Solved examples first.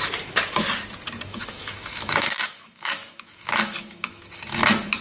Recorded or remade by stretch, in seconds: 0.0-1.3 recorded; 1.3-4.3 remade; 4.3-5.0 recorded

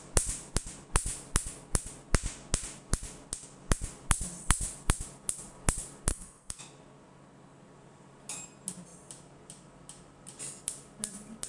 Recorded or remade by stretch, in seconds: 0.0-6.1 recorded; 6.1-6.6 remade; 6.6-11.5 recorded

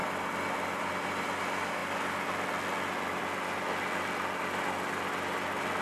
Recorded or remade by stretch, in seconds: 0.0-5.8 recorded

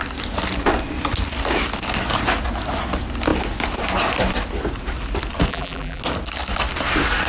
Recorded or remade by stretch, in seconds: 0.0-5.5 recorded; 5.5-6.0 remade; 6.0-7.3 recorded

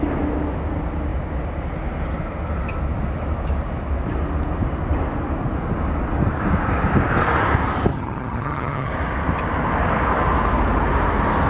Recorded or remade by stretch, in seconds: 0.0-7.9 recorded; 7.9-8.9 remade; 8.9-11.5 recorded

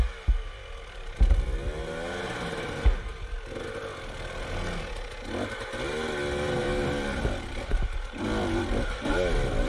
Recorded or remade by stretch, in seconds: 0.0-6.6 recorded; 6.6-9.1 remade; 9.1-9.7 recorded